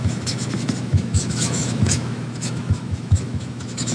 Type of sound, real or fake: fake